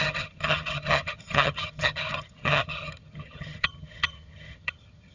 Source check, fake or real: fake